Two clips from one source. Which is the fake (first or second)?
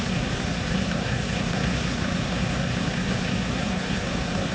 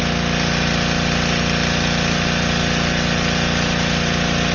first